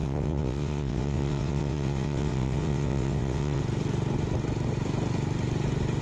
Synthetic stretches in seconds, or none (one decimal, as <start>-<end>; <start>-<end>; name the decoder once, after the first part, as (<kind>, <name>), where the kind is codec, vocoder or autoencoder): 0.0-3.6 (vocoder, WaveNeXt)